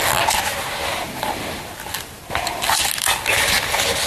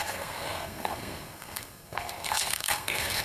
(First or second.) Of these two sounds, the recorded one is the first